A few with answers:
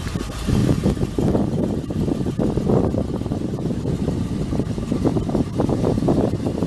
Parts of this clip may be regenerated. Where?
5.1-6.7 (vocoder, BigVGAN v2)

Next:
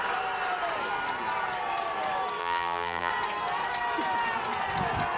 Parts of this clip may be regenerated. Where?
2.4-3.1 (vocoder, BigVGAN v2)